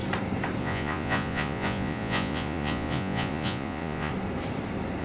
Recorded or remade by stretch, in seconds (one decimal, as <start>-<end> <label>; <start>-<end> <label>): 0.0-0.6 recorded; 0.6-4.1 remade; 4.1-5.0 recorded